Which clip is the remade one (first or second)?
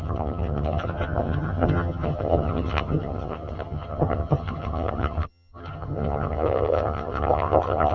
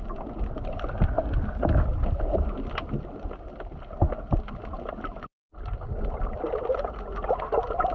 first